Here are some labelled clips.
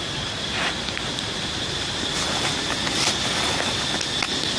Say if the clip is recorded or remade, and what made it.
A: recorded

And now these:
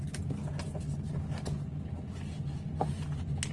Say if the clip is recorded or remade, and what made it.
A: recorded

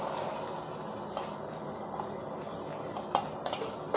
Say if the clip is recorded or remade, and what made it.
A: recorded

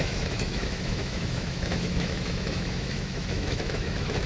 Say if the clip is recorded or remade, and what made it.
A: remade, autoencoder, DAC-VAE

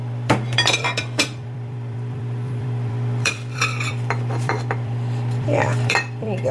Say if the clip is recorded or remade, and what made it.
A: remade, vocoder, BigVGAN v2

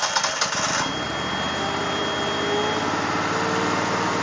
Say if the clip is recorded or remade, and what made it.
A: recorded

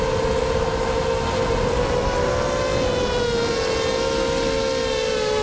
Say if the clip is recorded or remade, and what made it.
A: recorded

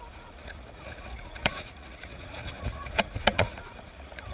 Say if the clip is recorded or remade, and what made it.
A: remade, vocoder, Vocos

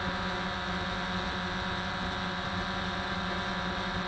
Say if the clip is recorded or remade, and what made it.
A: recorded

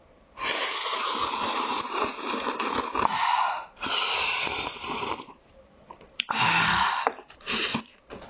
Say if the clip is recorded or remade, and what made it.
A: remade, vocoder, BigVGAN v2